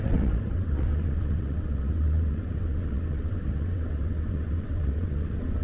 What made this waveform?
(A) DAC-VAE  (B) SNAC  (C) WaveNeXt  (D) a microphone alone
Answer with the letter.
C